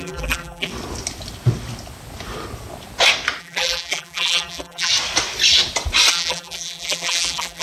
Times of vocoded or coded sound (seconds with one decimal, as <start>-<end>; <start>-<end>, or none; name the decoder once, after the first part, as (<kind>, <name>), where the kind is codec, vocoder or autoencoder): 0.0-0.7 (vocoder, BigVGAN v2); 3.4-4.9; 6.1-7.6